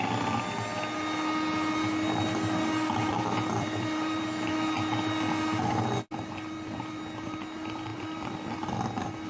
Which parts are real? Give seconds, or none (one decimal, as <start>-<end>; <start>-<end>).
0.0-3.1; 4.2-7.9; 8.6-9.3